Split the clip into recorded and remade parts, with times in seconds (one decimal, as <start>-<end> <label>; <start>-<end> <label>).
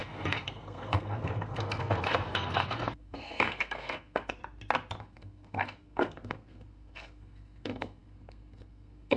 0.0-4.4 remade; 4.4-5.0 recorded; 5.0-9.2 remade